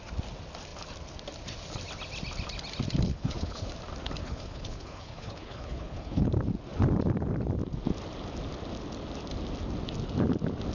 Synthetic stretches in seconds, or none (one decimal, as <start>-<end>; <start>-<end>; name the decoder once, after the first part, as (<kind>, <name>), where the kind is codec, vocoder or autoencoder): 3.1-3.7 (codec, HILCodec); 4.2-6.3